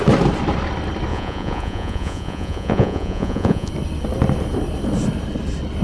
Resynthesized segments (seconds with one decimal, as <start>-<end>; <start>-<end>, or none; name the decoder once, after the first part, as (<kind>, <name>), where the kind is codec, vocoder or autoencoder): 1.1-3.7 (vocoder, Vocos)